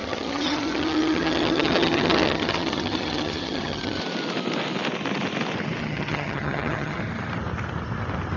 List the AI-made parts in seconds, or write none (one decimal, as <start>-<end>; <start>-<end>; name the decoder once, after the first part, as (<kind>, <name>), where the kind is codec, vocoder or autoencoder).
0.0-4.0 (vocoder, HiFi-GAN); 5.8-7.0